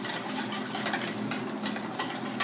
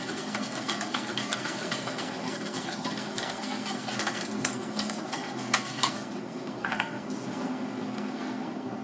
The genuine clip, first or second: first